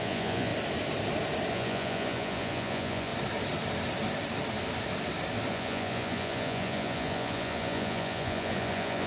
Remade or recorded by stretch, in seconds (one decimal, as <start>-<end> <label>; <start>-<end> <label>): 0.0-0.5 remade; 0.5-1.5 recorded; 1.5-3.1 remade; 3.1-5.5 recorded; 5.5-9.1 remade